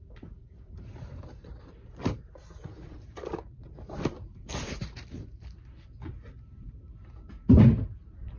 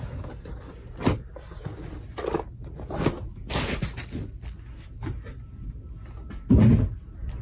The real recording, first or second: second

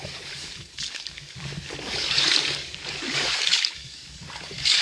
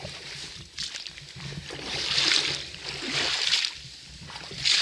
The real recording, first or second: second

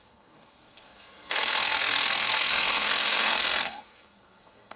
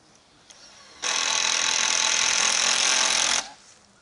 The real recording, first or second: second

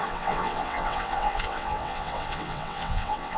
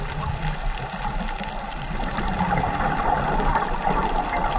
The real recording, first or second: second